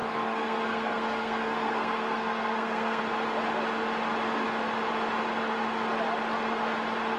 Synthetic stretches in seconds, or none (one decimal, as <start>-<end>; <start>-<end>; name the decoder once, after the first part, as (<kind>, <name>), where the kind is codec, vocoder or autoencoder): 0.0-3.0 (codec, SNAC)